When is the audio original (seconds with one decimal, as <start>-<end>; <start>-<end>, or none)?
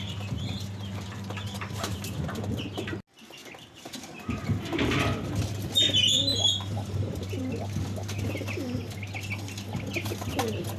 0.0-3.4; 4.9-6.3; 7.4-10.8